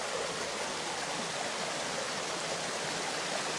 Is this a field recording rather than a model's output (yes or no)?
yes